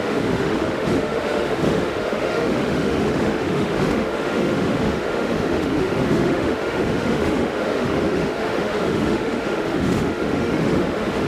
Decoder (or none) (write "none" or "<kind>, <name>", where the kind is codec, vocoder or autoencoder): autoencoder, DAC-VAE